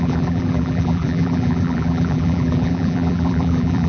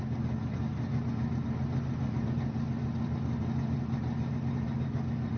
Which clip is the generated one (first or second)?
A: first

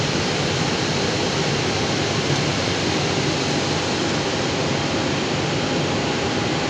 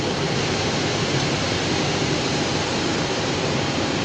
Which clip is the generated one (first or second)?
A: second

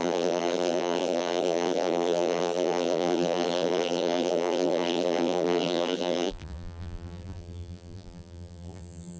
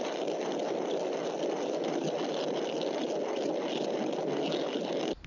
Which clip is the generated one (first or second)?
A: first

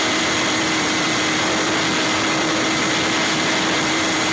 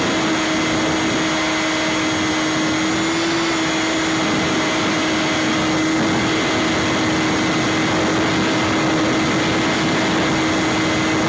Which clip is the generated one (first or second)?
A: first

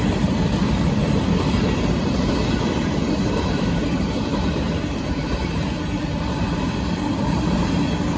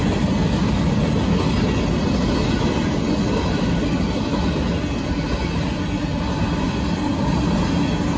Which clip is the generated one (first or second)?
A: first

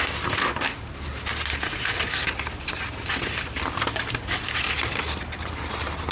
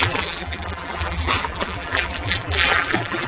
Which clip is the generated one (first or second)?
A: second